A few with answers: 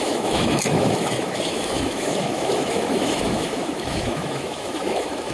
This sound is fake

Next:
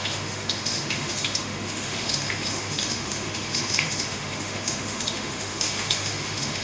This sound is fake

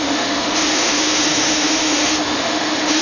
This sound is fake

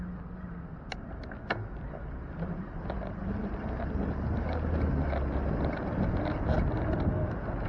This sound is real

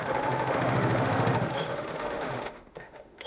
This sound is fake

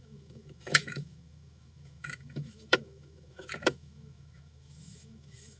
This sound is fake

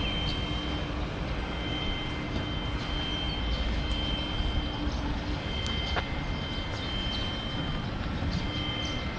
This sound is real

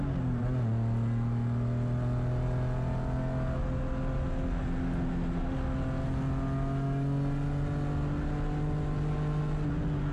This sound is real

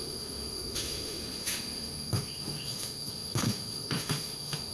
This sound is fake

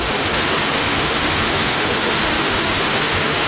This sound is fake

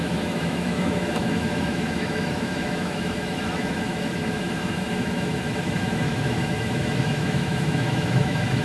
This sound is fake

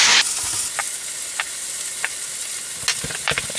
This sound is real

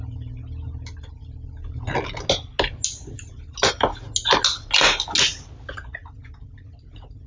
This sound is real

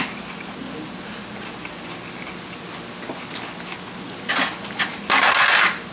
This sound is real